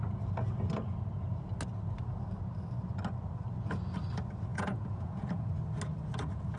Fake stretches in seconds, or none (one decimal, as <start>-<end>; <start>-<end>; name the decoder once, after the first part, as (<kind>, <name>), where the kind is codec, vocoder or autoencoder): 4.5-5.5 (vocoder, Vocos)